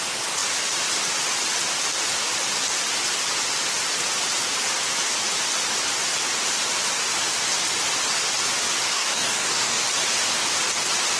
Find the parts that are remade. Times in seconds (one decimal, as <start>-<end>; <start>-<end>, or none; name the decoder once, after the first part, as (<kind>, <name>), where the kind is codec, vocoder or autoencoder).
8.9-9.9 (codec, DAC)